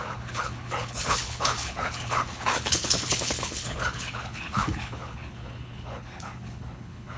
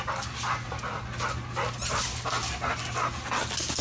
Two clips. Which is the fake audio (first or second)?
first